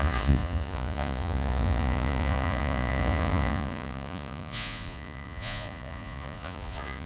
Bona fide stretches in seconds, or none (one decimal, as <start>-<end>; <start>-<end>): none